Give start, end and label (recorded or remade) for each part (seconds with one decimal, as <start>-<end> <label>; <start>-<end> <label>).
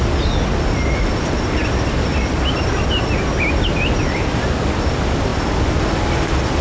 0.0-6.6 recorded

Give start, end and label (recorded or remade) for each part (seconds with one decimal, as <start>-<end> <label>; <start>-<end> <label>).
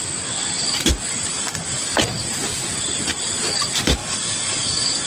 0.0-1.3 recorded; 1.3-1.8 remade; 1.8-4.0 recorded; 4.0-5.1 remade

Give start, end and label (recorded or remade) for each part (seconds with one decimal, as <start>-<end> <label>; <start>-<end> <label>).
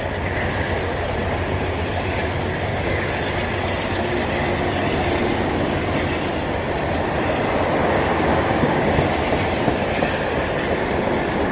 0.0-2.7 recorded; 2.7-3.2 remade; 3.2-7.8 recorded; 7.8-9.1 remade; 9.1-11.5 recorded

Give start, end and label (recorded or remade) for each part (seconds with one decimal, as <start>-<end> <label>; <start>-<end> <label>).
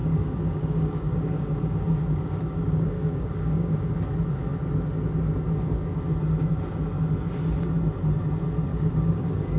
0.0-3.9 remade; 3.9-8.7 recorded; 8.7-9.6 remade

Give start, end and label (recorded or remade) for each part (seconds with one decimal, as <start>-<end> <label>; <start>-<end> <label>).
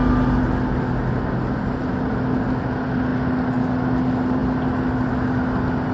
0.0-5.9 recorded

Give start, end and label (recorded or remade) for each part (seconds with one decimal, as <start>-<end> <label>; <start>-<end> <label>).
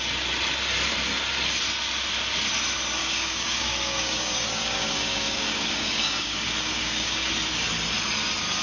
0.0-3.0 recorded; 3.0-7.3 remade; 7.3-8.6 recorded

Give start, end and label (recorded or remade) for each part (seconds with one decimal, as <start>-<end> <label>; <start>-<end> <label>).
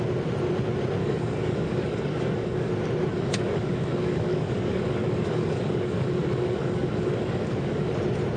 0.0-1.0 recorded; 1.0-2.7 remade; 2.7-3.1 recorded; 3.1-7.9 remade; 7.9-8.4 recorded